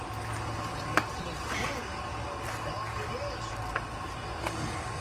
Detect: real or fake real